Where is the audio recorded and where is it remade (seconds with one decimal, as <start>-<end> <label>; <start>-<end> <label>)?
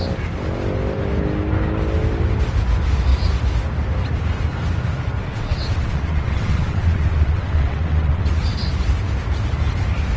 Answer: 0.0-5.3 recorded; 5.3-8.4 remade; 8.4-10.2 recorded